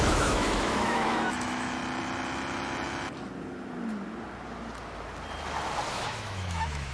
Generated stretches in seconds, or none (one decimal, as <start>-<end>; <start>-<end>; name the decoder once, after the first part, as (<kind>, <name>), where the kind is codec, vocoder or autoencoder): 0.0-1.8 (autoencoder, DAC-VAE); 5.9-6.9